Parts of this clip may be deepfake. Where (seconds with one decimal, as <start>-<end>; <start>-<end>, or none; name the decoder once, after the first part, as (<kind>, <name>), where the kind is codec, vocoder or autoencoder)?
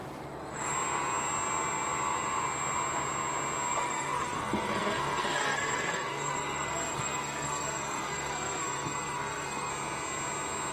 3.7-9.7 (codec, SNAC)